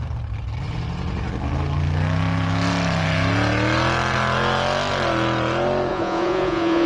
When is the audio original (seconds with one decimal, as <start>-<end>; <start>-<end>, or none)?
0.0-5.9